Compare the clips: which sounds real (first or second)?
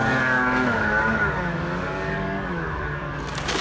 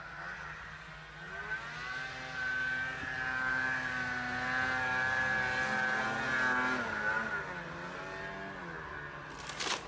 second